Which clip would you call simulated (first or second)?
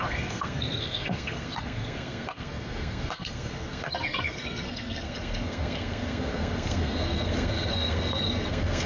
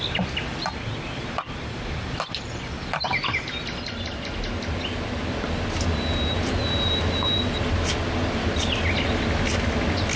first